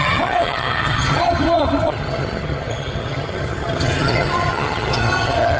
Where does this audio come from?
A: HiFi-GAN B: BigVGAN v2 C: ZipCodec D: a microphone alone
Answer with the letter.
A